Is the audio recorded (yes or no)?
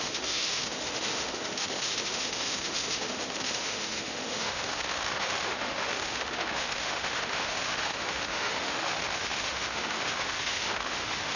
no